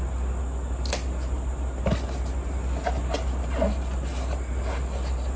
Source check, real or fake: real